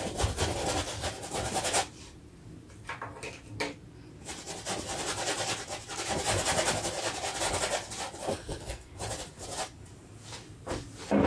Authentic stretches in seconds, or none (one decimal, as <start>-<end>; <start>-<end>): 0.0-8.3; 8.9-11.3